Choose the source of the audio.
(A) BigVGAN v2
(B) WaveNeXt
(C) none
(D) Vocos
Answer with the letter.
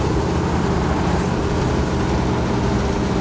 C